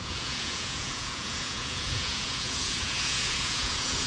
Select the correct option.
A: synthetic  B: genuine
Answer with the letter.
A